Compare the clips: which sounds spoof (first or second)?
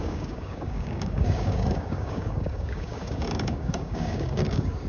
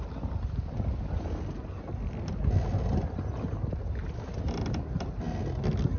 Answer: first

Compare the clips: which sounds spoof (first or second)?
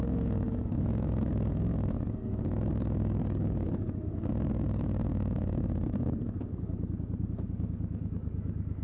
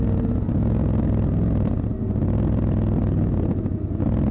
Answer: first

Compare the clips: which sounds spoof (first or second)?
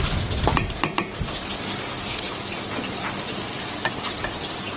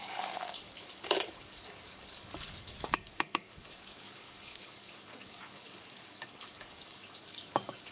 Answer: second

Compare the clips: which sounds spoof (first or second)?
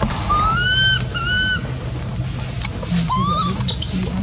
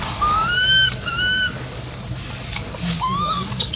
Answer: second